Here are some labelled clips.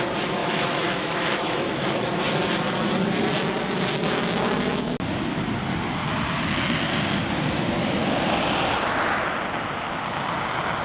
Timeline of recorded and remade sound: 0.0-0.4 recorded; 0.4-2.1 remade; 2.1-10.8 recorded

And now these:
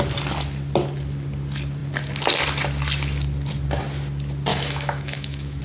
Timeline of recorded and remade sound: 0.0-4.5 recorded; 4.5-5.6 remade